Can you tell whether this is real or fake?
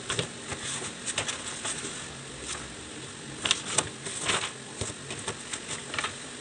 real